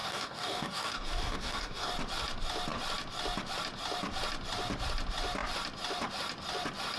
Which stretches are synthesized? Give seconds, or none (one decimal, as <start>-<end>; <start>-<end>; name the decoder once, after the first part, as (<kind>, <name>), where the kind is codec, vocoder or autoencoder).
0.0-1.9 (codec, DAC)